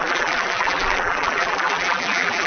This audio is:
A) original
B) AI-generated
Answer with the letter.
B